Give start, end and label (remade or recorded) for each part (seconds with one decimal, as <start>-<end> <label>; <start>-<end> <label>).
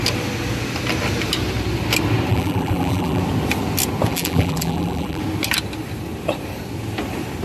0.0-2.3 recorded; 2.3-3.2 remade; 3.2-4.1 recorded; 4.1-5.2 remade; 5.2-7.4 recorded